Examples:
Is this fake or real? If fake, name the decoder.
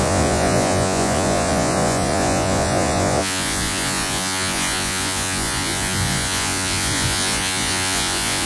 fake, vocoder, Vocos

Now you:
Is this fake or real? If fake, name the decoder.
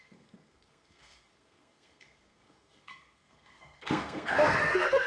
fake, codec, SNAC